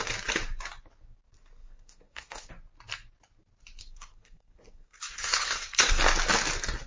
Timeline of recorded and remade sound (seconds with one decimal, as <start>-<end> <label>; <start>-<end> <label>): 0.0-1.6 recorded; 1.6-2.5 remade; 2.5-3.8 recorded; 3.8-6.0 remade; 6.0-6.9 recorded